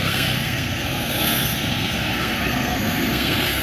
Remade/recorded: remade